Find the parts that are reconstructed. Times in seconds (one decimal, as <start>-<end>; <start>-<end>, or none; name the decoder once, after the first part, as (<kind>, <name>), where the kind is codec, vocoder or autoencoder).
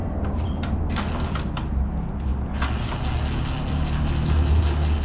0.0-0.8 (vocoder, BigVGAN v2)